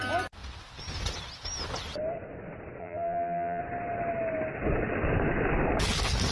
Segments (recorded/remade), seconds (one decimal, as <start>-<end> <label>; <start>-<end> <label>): 0.0-2.8 recorded; 2.8-3.6 remade; 3.6-6.3 recorded